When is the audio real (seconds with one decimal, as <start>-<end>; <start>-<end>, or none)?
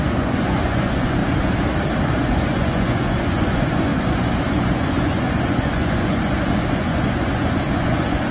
1.2-2.1